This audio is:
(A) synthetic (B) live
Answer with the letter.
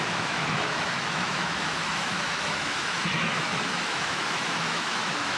A